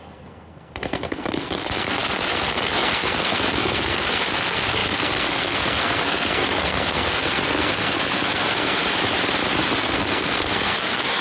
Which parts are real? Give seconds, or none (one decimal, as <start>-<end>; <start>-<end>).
8.8-9.8